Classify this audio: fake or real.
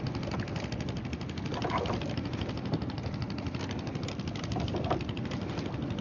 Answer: real